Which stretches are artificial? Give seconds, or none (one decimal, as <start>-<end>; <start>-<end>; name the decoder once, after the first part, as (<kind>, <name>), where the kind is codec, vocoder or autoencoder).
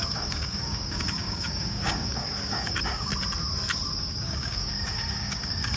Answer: 0.0-3.1 (codec, DAC); 4.0-5.8